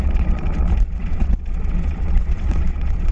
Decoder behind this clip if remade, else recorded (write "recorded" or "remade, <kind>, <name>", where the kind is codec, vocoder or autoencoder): remade, vocoder, WaveNeXt